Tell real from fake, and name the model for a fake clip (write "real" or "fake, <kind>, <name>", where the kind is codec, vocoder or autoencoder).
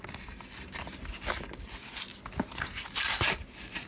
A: real